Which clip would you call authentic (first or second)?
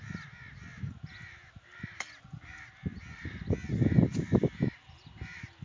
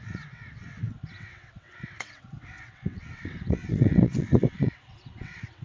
first